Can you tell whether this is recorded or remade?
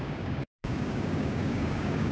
remade